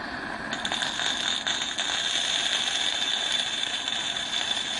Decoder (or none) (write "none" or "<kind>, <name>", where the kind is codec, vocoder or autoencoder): none